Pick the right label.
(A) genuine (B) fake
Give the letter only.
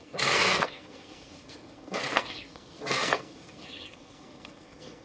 B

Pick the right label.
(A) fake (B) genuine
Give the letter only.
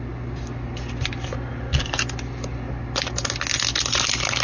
B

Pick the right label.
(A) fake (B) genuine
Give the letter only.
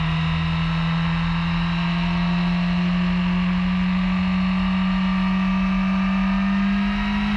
B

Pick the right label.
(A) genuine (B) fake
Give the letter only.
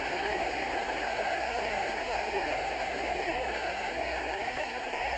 B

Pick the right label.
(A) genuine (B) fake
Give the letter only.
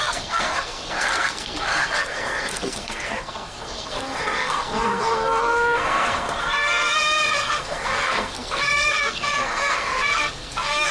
B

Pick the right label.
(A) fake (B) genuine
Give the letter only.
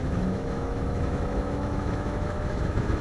A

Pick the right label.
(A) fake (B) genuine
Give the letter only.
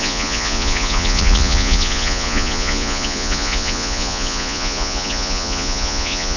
A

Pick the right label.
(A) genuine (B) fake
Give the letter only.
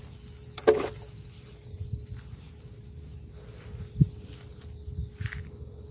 A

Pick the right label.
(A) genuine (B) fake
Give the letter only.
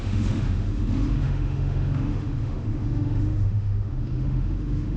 B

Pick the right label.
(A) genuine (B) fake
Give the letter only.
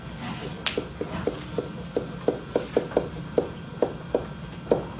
A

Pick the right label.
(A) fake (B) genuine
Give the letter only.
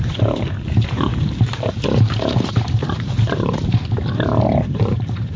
A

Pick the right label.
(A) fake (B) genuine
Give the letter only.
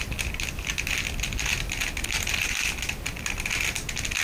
B